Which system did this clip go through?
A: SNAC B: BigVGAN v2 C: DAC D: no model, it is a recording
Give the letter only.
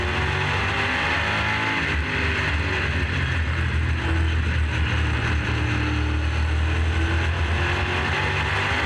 D